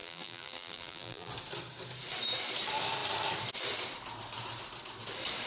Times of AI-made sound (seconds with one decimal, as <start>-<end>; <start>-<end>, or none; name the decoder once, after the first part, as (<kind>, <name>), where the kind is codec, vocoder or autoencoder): 0.0-1.3 (vocoder, BigVGAN v2)